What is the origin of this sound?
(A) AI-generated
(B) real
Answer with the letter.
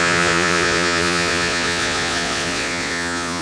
A